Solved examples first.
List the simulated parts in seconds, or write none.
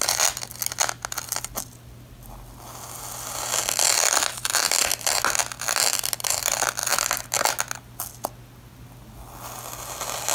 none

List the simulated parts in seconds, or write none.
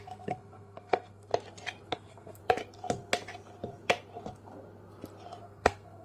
0.0-1.3 (codec, SNAC); 1.9-2.4; 5.4-6.0